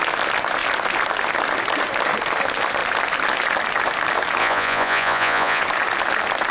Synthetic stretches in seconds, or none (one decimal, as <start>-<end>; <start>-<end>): 4.4-5.6